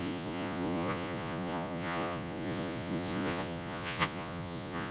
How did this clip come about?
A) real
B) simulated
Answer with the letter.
B